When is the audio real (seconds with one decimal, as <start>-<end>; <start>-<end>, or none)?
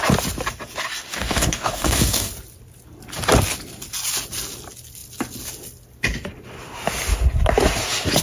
0.0-1.1; 2.3-8.2